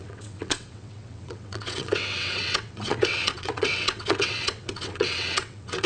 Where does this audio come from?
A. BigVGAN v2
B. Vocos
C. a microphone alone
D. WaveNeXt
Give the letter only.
D